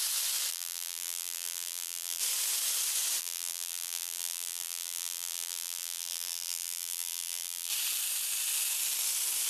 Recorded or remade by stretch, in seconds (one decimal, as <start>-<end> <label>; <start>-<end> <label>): 0.0-0.5 recorded; 0.5-2.2 remade; 2.2-3.2 recorded; 3.2-7.7 remade; 7.7-9.5 recorded